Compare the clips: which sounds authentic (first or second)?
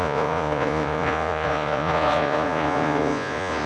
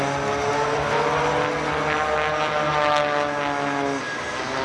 second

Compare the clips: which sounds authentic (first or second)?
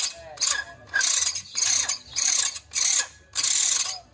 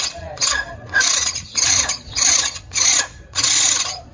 first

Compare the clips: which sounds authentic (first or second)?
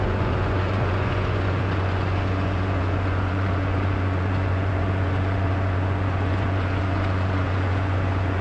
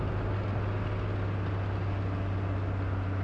second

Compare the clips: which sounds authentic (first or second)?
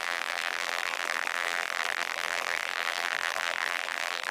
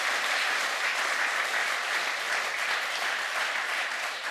second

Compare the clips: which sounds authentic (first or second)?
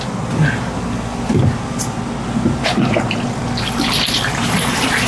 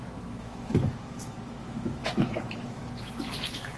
first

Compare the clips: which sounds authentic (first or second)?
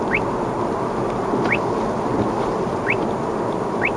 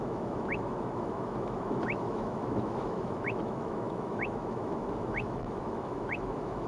first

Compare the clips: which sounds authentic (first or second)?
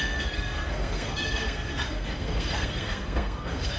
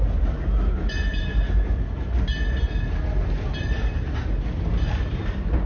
second